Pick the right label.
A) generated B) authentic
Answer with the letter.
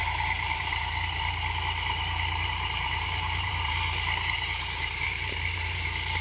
A